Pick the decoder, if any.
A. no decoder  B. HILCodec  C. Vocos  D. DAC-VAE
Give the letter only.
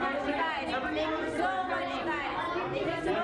A